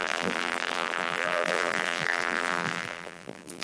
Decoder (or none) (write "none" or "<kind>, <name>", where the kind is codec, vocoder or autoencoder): vocoder, BigVGAN v2